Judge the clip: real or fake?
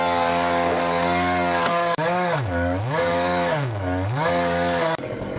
fake